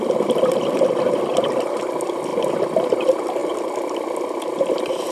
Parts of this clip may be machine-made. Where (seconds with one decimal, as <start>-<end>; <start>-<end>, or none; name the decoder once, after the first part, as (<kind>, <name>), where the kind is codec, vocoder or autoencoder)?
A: none